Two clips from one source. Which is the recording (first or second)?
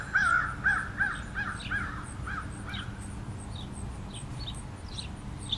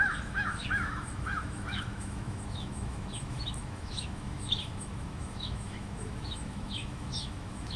first